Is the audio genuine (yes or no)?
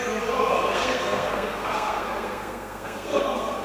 no